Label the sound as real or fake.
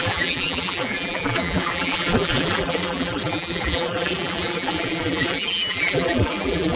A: fake